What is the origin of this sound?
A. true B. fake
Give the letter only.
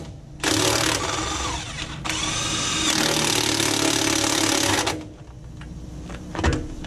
A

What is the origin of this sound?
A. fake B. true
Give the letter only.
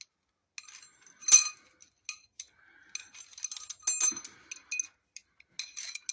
B